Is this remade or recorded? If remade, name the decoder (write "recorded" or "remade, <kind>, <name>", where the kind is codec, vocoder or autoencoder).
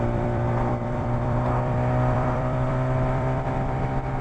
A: remade, vocoder, BigVGAN v2